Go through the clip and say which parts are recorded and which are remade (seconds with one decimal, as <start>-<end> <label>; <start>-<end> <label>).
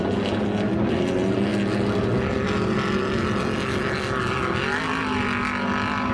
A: 0.0-6.1 recorded